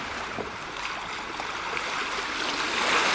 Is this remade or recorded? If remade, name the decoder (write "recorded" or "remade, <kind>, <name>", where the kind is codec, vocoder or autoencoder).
recorded